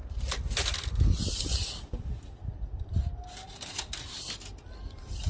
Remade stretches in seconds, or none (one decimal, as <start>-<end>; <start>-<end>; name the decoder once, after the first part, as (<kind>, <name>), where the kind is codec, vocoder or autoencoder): none